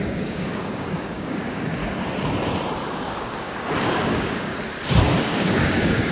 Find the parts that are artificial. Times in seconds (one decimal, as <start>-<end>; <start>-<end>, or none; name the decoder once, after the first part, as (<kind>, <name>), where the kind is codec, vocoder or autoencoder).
0.0-1.8 (codec, DAC); 2.9-4.5; 5.2-6.1